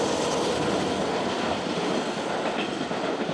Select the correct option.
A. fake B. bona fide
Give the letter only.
B